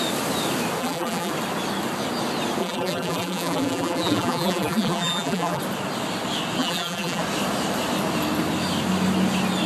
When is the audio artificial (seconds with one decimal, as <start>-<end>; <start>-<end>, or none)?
0.8-1.3; 2.6-5.6; 6.6-7.2